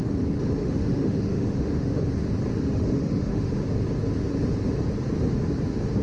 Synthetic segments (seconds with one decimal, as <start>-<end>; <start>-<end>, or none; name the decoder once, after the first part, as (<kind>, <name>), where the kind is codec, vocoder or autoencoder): 0.6-2.0 (autoencoder, DAC-VAE); 2.5-3.5